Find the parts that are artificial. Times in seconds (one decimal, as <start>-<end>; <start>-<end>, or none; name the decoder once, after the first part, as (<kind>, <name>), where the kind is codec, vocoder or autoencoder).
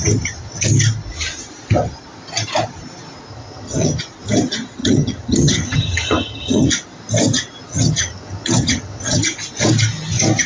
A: 3.3-4.0 (vocoder, HiFi-GAN); 4.8-6.7; 7.7-9.2